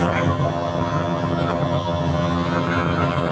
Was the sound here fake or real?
fake